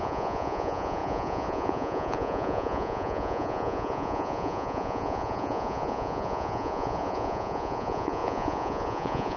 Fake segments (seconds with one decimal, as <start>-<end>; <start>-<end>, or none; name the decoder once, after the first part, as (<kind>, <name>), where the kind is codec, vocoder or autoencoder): 0.0-9.4 (vocoder, Vocos)